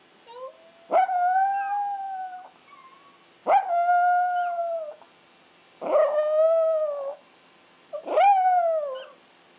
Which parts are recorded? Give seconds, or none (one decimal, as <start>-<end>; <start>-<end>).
0.0-9.6